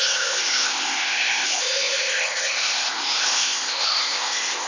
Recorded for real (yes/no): no